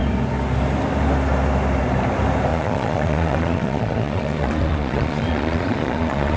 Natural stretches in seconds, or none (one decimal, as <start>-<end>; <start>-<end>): 0.0-2.5